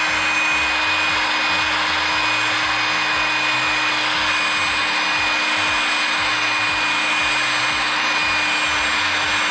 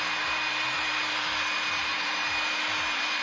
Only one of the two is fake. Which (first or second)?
second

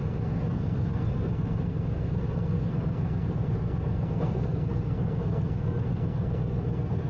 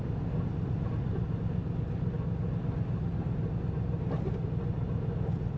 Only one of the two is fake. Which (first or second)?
first